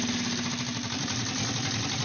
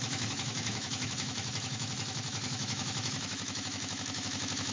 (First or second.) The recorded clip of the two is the first